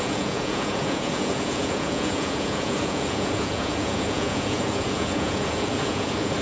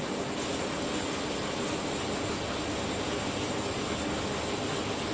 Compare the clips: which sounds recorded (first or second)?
second